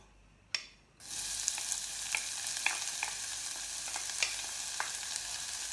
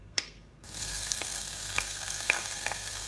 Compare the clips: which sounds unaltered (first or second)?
first